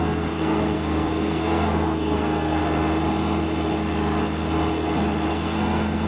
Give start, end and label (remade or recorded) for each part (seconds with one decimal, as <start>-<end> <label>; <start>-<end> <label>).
0.0-2.6 remade; 2.6-5.3 recorded; 5.3-6.1 remade